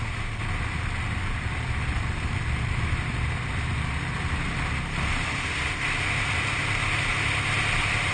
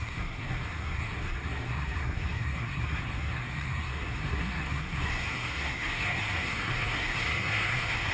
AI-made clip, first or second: second